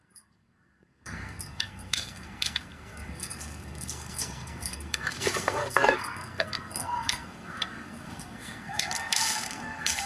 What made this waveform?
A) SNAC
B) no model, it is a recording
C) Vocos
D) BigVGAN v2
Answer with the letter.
A